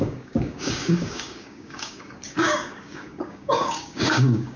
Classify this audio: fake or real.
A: fake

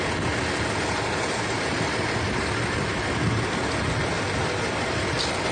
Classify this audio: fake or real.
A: real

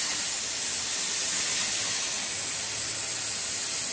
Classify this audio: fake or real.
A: real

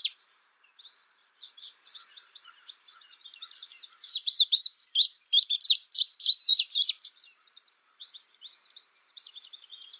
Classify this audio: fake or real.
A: fake